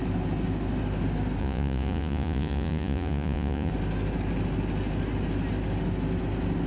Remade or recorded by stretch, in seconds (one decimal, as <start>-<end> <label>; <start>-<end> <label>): 0.0-1.4 recorded; 1.4-3.7 remade; 3.7-6.7 recorded